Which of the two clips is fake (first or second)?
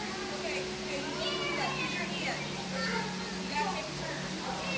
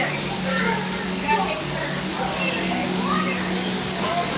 second